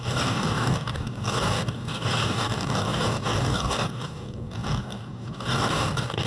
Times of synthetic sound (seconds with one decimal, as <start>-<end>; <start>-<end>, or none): 0.0-6.3